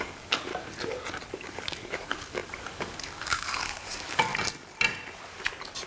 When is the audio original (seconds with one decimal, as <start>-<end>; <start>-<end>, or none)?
0.5-1.3; 4.3-5.9

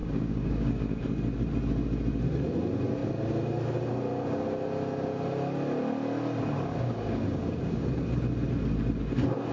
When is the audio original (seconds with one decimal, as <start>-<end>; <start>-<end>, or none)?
1.0-6.7; 7.9-9.5

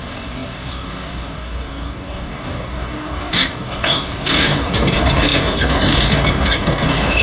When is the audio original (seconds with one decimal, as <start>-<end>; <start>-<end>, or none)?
none

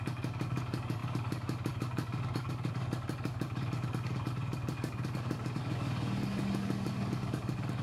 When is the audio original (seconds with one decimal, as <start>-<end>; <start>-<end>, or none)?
none